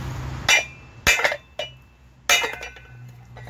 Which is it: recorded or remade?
recorded